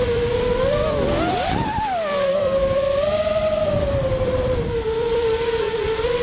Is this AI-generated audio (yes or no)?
yes